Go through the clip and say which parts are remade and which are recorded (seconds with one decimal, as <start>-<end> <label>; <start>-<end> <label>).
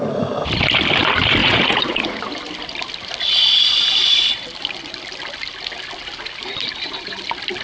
0.0-1.4 recorded; 1.4-2.2 remade; 2.2-7.6 recorded